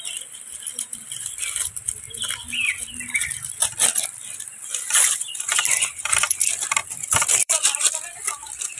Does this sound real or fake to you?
fake